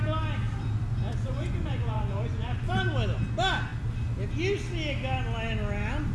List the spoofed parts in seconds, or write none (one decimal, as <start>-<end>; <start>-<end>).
0.9-2.7